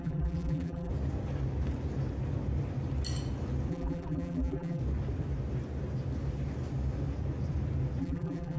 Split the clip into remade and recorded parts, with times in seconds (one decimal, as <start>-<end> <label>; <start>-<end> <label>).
0.0-0.9 remade; 0.9-3.7 recorded; 3.7-4.8 remade; 4.8-8.0 recorded; 8.0-8.6 remade